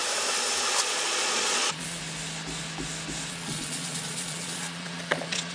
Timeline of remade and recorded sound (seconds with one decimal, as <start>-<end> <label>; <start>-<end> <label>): 0.0-0.8 recorded; 0.8-2.0 remade; 2.0-3.3 recorded; 3.3-5.5 remade